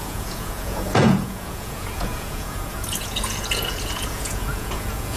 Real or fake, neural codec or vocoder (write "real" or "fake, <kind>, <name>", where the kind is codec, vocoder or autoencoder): fake, vocoder, Vocos